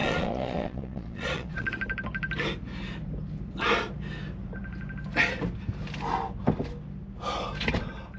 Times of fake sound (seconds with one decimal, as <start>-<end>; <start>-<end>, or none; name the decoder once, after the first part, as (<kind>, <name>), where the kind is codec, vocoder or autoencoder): 0.0-1.7 (vocoder, Vocos)